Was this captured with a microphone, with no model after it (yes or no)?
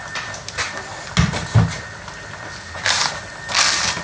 yes